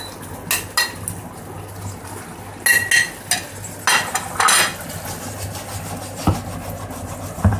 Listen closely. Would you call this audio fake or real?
real